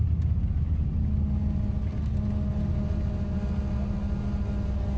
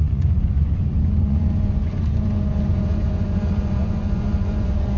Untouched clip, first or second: first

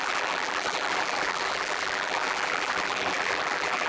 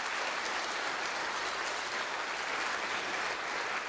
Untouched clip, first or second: second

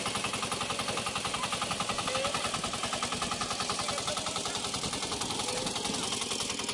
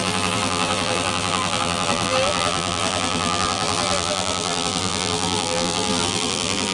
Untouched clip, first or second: first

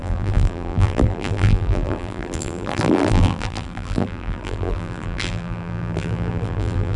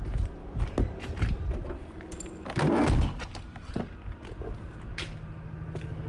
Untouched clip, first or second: second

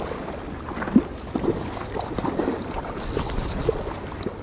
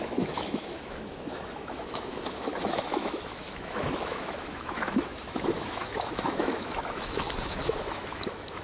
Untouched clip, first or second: first